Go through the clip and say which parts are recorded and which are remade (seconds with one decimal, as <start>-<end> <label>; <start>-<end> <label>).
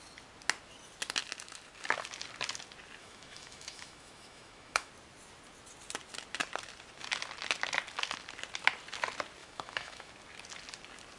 0.0-3.0 recorded; 3.0-4.9 remade; 4.9-9.4 recorded; 9.4-10.1 remade; 10.1-11.2 recorded